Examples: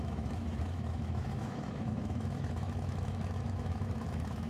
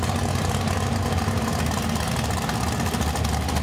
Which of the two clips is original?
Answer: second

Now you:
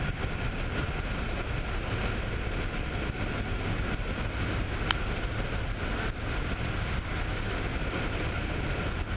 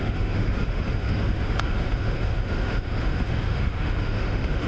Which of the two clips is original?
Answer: first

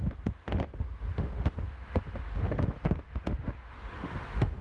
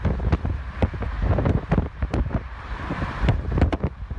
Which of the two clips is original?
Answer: second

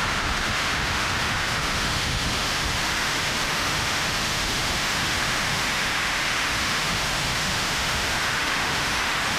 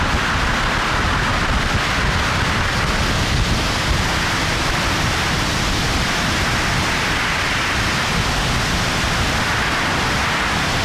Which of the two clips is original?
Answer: second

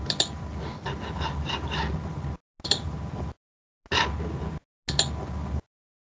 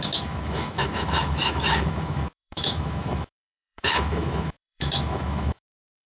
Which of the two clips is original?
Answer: first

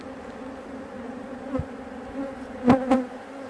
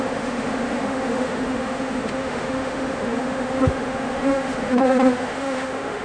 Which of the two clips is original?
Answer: first